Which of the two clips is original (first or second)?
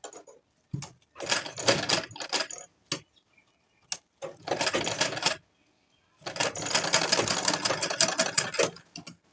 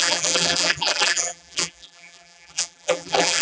first